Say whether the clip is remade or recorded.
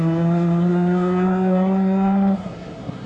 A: remade